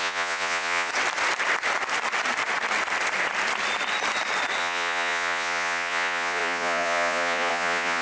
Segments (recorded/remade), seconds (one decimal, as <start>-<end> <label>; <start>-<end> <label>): 0.0-0.9 remade; 0.9-4.6 recorded; 4.6-8.0 remade